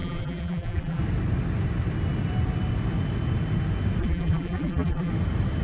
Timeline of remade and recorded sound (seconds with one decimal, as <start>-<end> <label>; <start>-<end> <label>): 0.0-1.0 remade; 1.0-4.0 recorded; 4.0-5.1 remade; 5.1-5.6 recorded

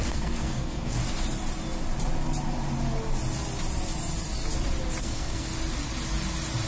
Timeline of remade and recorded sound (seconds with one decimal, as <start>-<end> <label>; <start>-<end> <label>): 0.0-1.0 remade; 1.0-5.0 recorded; 5.0-5.5 remade; 5.5-6.7 recorded

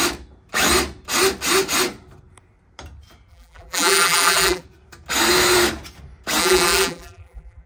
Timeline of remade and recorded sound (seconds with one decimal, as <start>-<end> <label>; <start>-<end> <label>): 0.0-3.3 recorded; 3.3-4.6 remade; 4.6-6.4 recorded; 6.4-7.7 remade

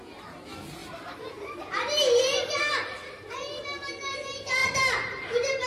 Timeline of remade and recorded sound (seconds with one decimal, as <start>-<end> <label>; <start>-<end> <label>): 0.0-4.6 recorded; 4.6-5.7 remade

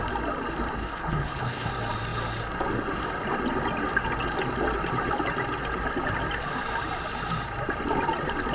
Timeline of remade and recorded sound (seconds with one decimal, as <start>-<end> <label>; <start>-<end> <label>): 0.0-0.8 recorded; 0.8-1.7 remade; 1.7-8.5 recorded

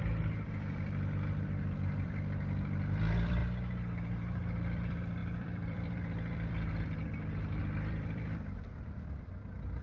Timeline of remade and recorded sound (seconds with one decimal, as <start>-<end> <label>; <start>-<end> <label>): 0.0-3.4 remade; 3.4-4.1 recorded; 4.1-9.8 remade